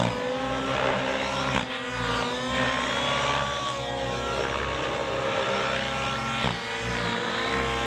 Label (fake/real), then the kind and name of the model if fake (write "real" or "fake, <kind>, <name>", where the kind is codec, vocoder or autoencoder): real